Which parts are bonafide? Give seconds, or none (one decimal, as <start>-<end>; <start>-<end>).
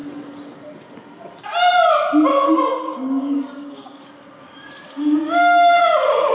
0.0-2.3; 4.1-4.9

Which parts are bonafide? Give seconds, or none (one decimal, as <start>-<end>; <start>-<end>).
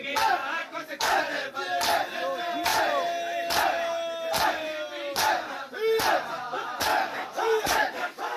0.0-0.6; 1.2-6.9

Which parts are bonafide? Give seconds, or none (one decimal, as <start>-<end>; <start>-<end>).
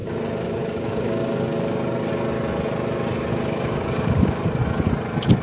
2.1-3.3; 4.6-5.4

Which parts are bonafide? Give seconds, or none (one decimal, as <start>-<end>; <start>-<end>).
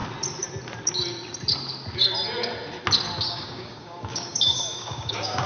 0.0-3.3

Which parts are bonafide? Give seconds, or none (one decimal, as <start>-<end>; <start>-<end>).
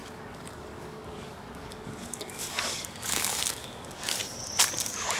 4.2-4.8